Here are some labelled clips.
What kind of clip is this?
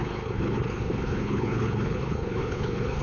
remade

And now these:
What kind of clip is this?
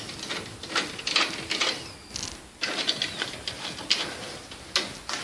recorded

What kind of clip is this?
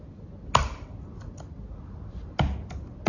recorded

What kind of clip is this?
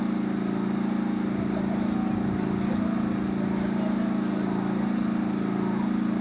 recorded